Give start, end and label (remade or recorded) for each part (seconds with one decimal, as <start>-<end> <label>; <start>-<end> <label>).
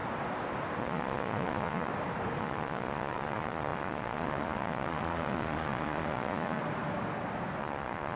0.0-0.8 recorded; 0.8-1.9 remade; 1.9-2.4 recorded; 2.4-6.6 remade; 6.6-7.6 recorded; 7.6-8.2 remade